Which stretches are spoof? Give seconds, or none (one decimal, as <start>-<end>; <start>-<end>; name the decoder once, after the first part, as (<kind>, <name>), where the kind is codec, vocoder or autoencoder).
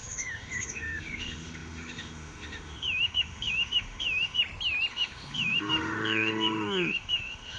0.0-4.4 (autoencoder, DAC-VAE); 4.9-7.6